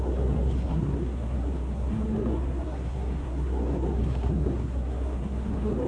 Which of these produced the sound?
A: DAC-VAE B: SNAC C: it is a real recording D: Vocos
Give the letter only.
B